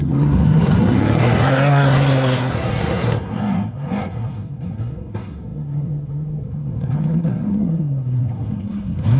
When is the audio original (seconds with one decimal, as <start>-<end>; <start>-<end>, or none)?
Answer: none